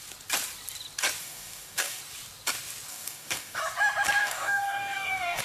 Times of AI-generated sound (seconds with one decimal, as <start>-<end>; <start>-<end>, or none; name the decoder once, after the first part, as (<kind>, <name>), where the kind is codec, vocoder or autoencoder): 1.2-2.0 (codec, DAC); 2.9-3.6; 4.2-5.4